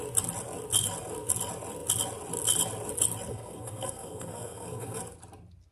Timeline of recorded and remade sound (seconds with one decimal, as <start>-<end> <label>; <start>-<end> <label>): 0.0-3.3 recorded; 3.3-5.0 remade; 5.0-5.7 recorded